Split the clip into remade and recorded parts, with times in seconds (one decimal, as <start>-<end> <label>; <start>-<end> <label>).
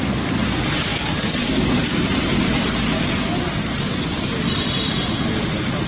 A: 0.0-5.9 recorded